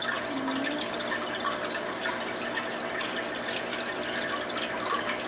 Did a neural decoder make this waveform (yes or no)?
no